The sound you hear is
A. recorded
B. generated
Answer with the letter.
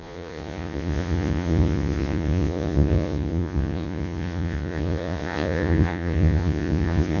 B